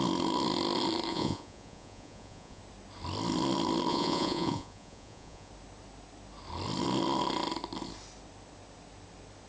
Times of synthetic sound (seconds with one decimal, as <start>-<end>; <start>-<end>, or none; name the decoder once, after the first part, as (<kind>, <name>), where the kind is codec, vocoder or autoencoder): 1.1-2.6 (vocoder, Vocos); 3.9-5.5